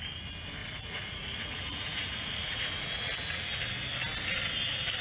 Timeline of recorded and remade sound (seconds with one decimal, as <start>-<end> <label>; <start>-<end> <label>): 0.0-0.6 recorded; 0.6-3.6 remade; 3.6-5.0 recorded